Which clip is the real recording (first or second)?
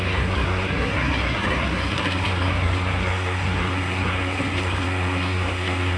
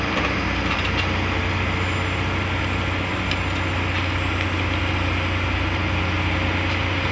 second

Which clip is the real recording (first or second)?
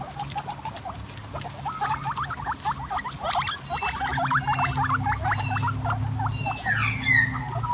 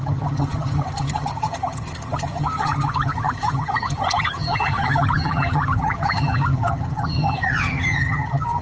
first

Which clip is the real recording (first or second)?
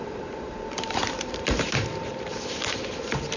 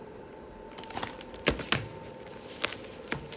second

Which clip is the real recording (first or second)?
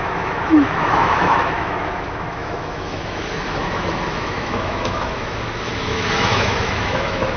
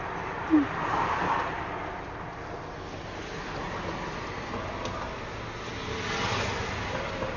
second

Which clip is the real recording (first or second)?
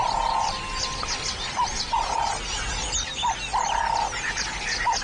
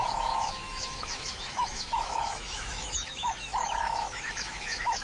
first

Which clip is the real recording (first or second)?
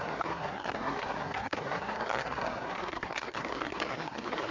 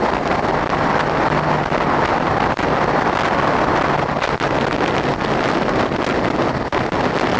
second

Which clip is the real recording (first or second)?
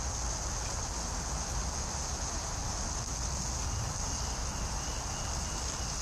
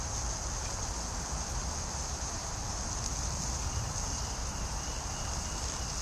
first